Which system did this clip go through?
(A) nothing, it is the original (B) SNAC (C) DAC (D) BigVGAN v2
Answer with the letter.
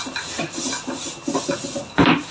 A